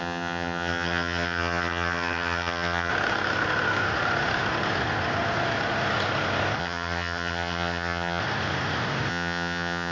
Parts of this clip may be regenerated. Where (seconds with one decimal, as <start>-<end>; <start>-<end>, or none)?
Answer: 0.0-2.9; 6.6-8.2; 9.1-9.9